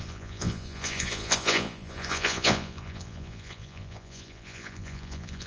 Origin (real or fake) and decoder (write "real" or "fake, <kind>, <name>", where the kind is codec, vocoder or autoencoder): fake, vocoder, Vocos